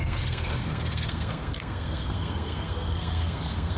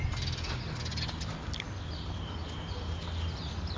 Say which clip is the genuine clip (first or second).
second